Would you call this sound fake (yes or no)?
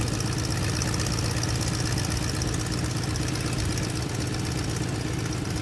no